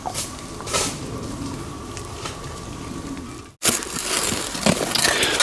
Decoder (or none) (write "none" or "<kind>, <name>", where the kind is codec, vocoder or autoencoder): none